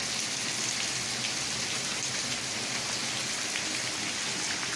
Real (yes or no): yes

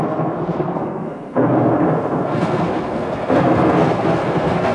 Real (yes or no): no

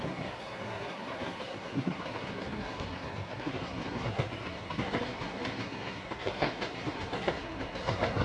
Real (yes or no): no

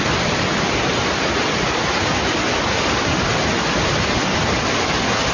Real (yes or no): yes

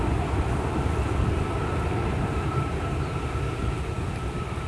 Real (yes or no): yes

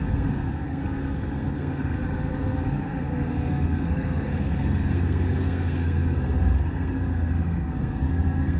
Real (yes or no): no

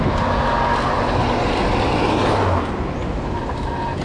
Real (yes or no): yes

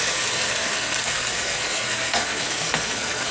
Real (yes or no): no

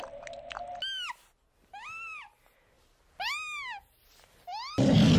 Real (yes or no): yes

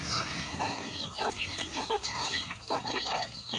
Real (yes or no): no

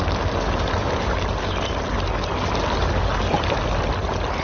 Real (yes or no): yes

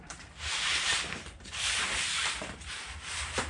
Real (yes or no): yes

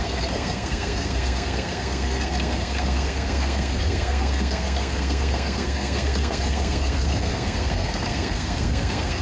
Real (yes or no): no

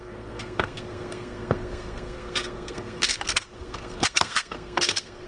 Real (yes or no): no